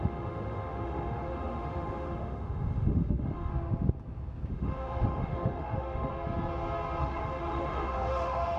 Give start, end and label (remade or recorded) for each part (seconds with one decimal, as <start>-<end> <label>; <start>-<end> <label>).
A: 0.0-3.5 remade; 3.5-4.5 recorded; 4.5-6.1 remade; 6.1-7.0 recorded; 7.0-8.6 remade